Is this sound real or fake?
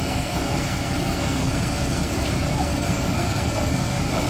fake